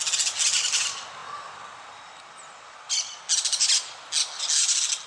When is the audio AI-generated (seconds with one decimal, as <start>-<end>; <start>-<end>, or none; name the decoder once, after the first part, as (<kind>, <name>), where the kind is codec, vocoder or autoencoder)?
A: none

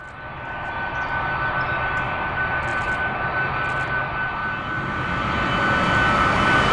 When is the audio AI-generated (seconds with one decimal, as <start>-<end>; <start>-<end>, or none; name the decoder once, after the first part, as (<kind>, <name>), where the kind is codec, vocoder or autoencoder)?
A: none

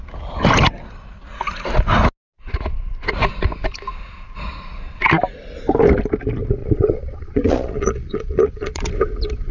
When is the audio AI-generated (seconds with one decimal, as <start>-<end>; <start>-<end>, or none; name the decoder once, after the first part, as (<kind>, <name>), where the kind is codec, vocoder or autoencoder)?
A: 6.6-8.9 (vocoder, Vocos)